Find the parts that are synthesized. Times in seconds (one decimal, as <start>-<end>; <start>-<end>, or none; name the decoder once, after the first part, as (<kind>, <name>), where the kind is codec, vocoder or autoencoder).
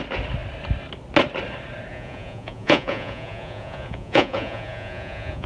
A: 1.9-5.5 (vocoder, Vocos)